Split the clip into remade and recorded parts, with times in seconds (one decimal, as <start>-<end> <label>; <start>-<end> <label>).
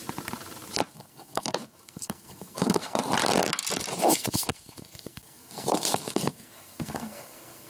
0.0-0.9 recorded; 0.9-3.0 remade; 3.0-4.0 recorded; 4.0-7.7 remade